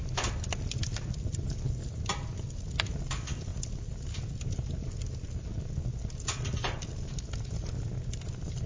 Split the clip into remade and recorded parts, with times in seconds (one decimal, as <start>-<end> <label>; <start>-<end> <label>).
0.0-8.7 recorded